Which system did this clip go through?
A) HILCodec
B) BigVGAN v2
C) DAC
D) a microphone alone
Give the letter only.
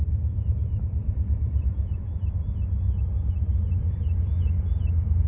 B